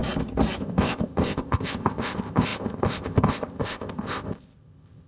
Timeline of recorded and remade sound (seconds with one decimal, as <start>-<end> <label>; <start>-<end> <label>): 0.0-0.6 recorded; 0.6-5.1 remade